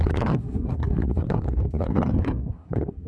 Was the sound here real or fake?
fake